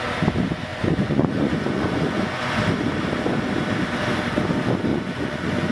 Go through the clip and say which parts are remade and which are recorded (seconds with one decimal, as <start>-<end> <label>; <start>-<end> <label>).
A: 0.0-0.7 recorded; 0.7-2.6 remade; 2.6-4.9 recorded; 4.9-5.7 remade